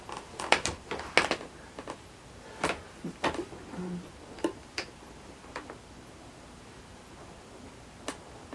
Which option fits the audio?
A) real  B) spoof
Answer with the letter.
A